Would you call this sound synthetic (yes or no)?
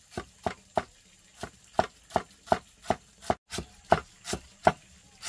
no